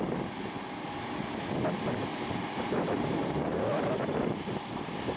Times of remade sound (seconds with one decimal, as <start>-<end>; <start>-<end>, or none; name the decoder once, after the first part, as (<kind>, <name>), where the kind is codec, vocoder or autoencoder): 2.1-3.3 (vocoder, BigVGAN v2)